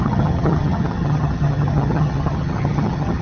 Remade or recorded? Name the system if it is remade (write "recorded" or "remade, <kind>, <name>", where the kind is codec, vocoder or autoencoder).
remade, vocoder, HiFi-GAN